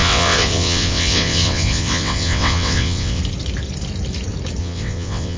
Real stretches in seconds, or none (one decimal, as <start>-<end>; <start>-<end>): 3.2-4.6